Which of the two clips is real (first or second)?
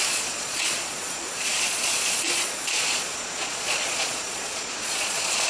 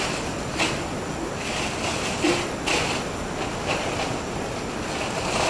second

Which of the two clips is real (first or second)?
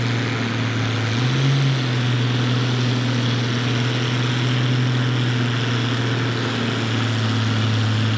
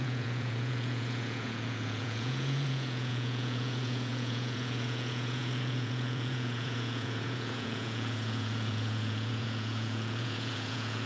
first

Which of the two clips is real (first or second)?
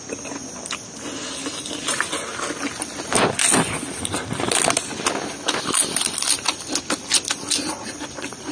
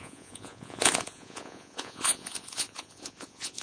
first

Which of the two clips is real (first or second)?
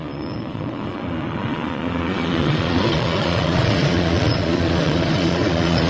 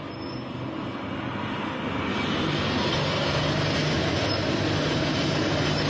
second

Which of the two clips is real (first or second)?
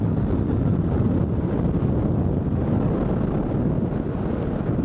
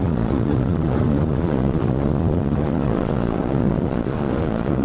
first